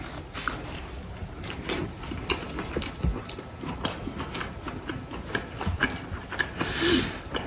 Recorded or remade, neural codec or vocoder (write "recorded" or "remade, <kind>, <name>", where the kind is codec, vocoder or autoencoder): recorded